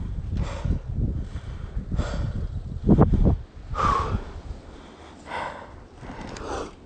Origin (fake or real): real